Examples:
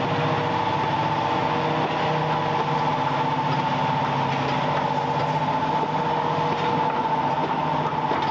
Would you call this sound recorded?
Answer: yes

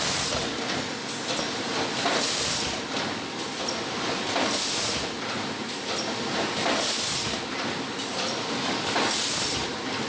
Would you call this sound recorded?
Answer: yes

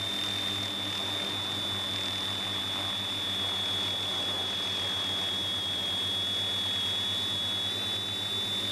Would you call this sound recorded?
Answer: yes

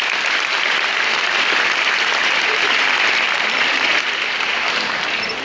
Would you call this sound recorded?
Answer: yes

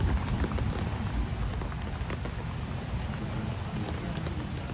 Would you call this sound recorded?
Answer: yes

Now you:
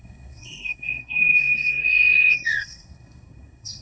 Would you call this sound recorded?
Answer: no